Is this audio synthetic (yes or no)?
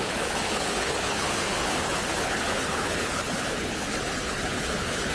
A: yes